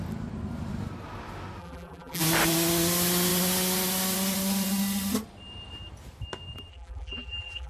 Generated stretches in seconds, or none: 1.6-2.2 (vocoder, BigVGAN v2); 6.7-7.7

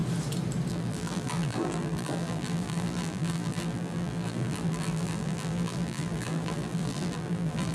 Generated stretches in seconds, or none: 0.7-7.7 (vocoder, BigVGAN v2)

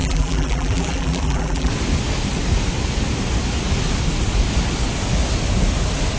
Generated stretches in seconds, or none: 0.0-1.7 (vocoder, BigVGAN v2)

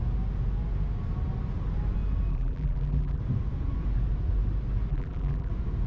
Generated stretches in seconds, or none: 2.3-3.2 (vocoder, BigVGAN v2); 4.9-5.5

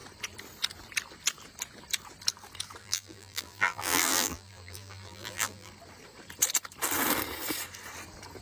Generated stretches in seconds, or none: 2.8-5.7 (vocoder, BigVGAN v2)

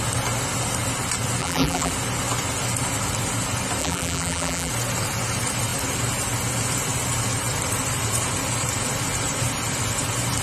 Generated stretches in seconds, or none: 1.4-1.9 (vocoder, BigVGAN v2); 3.8-4.7